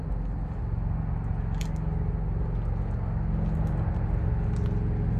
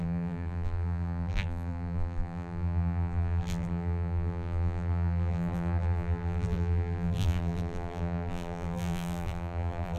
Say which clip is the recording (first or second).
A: first